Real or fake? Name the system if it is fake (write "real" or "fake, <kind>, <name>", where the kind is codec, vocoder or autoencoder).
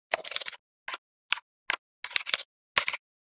real